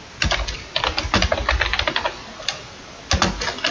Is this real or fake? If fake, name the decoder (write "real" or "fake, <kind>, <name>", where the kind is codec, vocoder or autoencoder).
real